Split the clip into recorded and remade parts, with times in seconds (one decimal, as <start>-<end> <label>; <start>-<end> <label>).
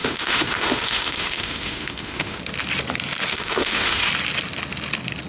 0.0-2.4 remade; 2.4-3.3 recorded; 3.3-4.1 remade; 4.1-5.3 recorded